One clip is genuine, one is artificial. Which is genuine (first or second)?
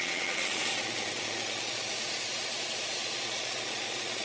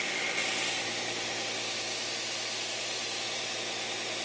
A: second